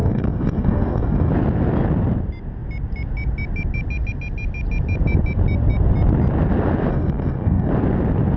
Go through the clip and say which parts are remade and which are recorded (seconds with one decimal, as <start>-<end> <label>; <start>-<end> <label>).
0.0-1.3 remade; 1.3-6.9 recorded; 6.9-7.7 remade; 7.7-8.4 recorded